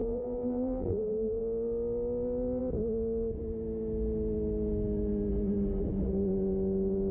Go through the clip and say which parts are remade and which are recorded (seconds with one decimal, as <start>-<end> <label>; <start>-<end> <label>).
0.0-1.4 remade; 1.4-7.1 recorded